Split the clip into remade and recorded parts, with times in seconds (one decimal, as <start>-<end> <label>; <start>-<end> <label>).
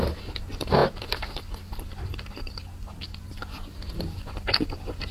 0.0-5.1 recorded